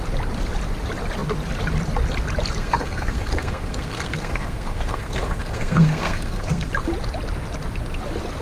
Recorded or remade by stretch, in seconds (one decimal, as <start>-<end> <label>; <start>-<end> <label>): 0.0-2.6 recorded; 2.6-6.7 remade; 6.7-8.4 recorded